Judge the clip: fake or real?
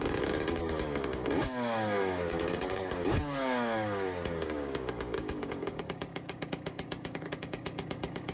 fake